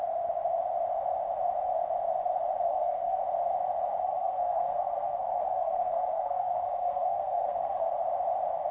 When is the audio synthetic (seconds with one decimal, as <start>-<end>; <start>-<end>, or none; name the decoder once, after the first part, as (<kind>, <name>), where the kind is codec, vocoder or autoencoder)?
2.7-3.2 (codec, SNAC); 4.0-7.9